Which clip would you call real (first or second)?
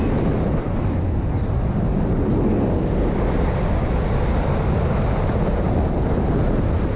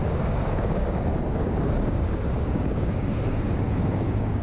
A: first